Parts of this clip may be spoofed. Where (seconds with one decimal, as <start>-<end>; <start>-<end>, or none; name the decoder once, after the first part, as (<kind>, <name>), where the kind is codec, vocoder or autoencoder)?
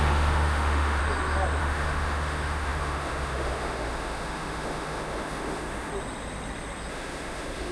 0.0-1.0 (autoencoder, DAC-VAE); 1.6-5.9; 6.9-7.7